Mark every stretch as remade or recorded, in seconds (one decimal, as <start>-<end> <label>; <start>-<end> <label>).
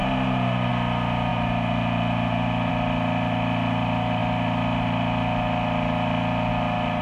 0.0-0.7 remade; 0.7-1.3 recorded; 1.3-2.7 remade; 2.7-7.0 recorded